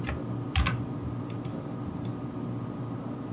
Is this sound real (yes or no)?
yes